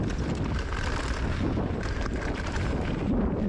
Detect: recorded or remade recorded